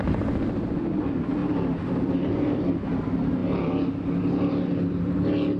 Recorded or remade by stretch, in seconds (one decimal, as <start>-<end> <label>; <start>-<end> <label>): 0.0-1.4 recorded; 1.4-2.7 remade; 2.7-5.6 recorded